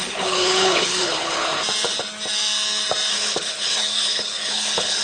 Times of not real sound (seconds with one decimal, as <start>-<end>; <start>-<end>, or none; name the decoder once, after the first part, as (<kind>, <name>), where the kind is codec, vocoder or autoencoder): 0.0-1.5 (codec, HILCodec); 3.1-5.0